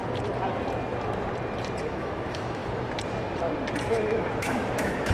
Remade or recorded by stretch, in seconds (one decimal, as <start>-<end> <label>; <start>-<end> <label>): 0.0-1.8 recorded; 1.8-2.6 remade; 2.6-3.9 recorded; 3.9-5.1 remade